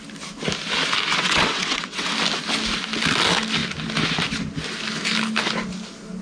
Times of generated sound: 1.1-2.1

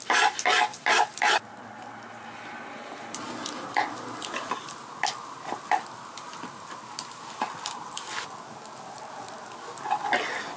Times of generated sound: none

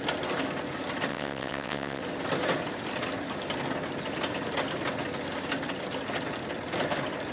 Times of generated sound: 1.1-2.0

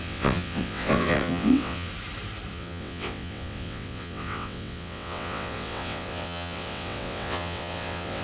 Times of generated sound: 0.0-1.9; 2.5-8.2

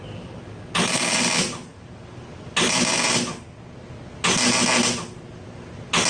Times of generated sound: none

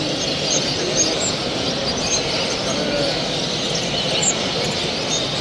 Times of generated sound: none

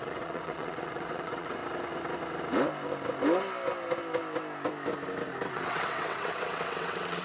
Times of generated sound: 0.0-1.6; 5.5-7.2

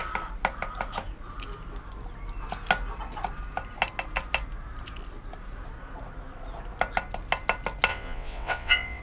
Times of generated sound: 7.9-9.0